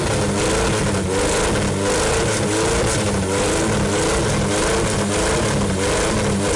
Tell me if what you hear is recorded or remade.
recorded